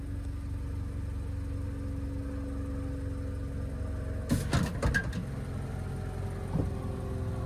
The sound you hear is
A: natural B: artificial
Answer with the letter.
A